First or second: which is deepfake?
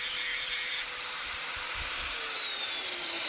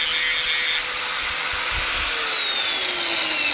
first